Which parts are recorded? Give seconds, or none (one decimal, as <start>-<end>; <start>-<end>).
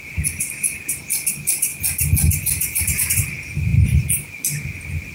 0.0-5.1